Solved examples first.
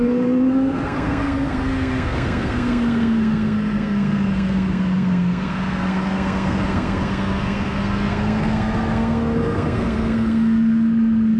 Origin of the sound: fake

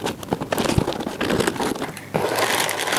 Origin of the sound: real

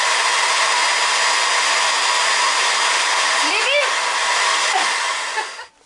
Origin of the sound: real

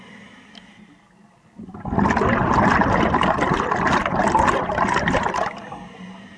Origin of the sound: real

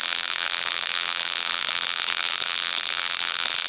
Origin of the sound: fake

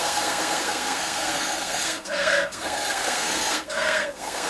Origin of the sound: fake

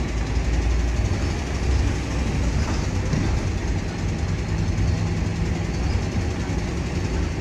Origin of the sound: real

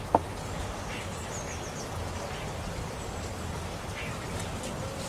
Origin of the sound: real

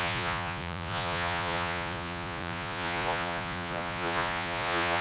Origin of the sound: fake